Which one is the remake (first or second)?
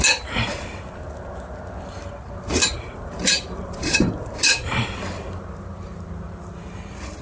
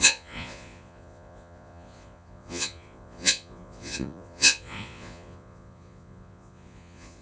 second